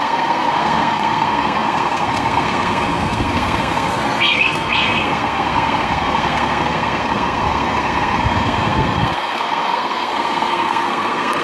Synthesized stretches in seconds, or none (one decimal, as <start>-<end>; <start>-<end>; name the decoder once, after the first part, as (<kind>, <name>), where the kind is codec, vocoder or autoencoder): 0.0-11.4 (codec, SNAC)